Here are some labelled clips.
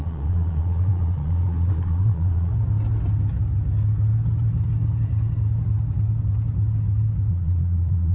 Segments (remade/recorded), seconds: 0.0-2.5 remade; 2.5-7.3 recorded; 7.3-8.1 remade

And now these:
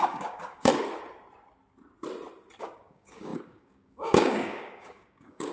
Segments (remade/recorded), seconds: 0.0-0.7 remade; 0.7-2.6 recorded; 2.6-5.5 remade

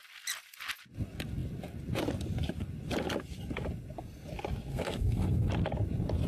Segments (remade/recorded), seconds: 0.0-4.7 recorded; 4.7-5.5 remade; 5.5-6.3 recorded

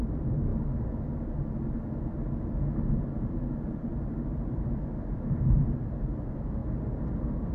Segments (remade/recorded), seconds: 0.0-0.5 remade; 0.5-2.9 recorded; 2.9-7.5 remade

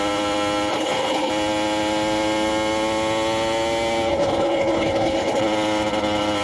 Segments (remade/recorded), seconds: 0.0-0.7 recorded; 0.7-1.3 remade; 1.3-4.1 recorded; 4.1-5.4 remade; 5.4-6.4 recorded